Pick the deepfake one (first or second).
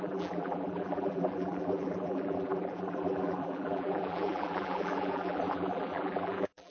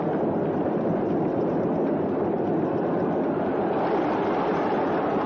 first